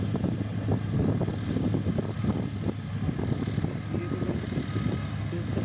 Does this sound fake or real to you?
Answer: real